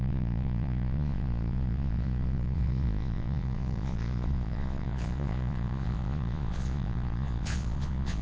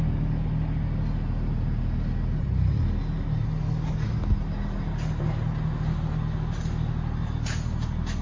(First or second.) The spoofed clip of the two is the first